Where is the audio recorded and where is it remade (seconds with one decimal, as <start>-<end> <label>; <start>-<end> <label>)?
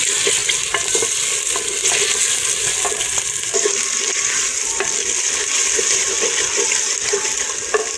0.0-8.0 recorded